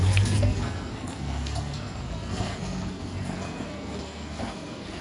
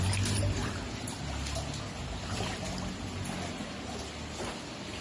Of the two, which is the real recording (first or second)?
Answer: second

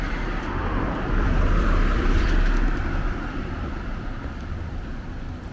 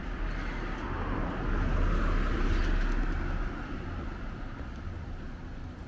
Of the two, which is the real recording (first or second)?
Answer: second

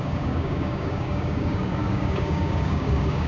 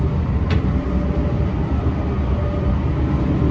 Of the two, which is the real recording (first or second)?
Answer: second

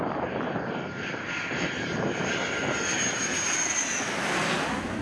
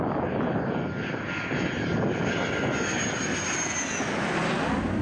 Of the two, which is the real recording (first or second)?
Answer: second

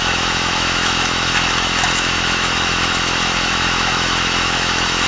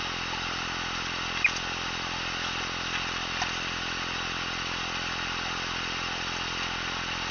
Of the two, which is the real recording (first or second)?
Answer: second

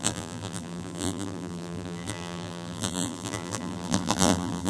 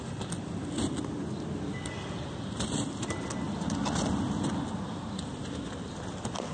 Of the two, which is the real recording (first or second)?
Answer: second